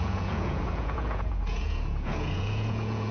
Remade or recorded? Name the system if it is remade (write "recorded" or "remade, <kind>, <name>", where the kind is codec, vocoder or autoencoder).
remade, vocoder, Vocos